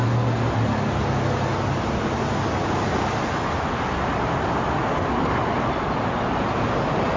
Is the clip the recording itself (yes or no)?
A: yes